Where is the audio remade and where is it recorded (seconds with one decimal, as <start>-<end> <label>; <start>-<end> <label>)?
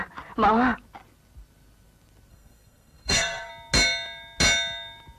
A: 0.0-2.3 recorded; 2.3-3.5 remade; 3.5-5.2 recorded